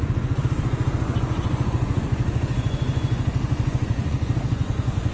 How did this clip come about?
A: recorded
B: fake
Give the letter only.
B